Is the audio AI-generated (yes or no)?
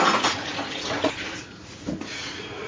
yes